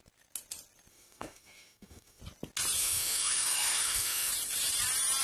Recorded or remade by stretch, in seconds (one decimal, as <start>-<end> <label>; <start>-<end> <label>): 0.0-0.9 recorded; 0.9-2.2 remade; 2.2-2.8 recorded; 2.8-4.3 remade; 4.3-5.2 recorded